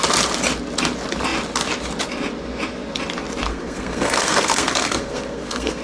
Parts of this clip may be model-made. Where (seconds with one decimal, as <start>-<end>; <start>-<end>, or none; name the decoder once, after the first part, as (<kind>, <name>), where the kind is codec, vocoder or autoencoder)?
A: 3.5-5.8 (codec, SNAC)

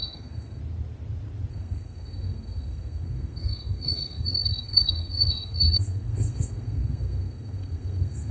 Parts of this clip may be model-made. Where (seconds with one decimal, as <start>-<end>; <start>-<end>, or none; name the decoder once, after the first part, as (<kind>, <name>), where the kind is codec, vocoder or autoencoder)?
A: 0.0-0.6 (codec, SNAC); 1.5-8.3

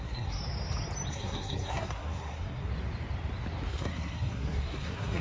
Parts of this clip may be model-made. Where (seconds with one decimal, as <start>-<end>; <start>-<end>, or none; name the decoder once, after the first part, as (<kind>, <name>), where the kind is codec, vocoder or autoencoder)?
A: 0.0-0.4 (codec, SNAC); 1.1-2.7; 3.7-5.2

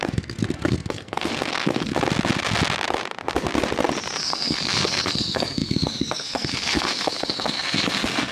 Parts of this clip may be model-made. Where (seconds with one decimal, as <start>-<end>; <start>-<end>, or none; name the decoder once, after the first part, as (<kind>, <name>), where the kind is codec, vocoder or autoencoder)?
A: 0.0-1.9 (codec, SNAC); 4.2-8.3

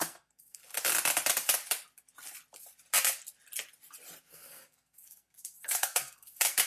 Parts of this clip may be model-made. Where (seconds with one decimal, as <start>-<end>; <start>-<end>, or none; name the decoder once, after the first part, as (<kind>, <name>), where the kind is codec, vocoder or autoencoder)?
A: 0.0-0.6 (codec, SNAC); 4.3-6.7